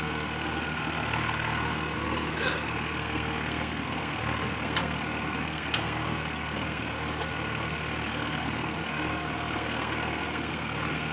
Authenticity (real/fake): fake